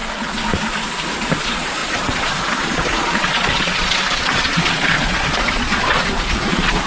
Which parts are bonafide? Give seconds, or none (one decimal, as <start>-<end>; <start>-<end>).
0.0-1.4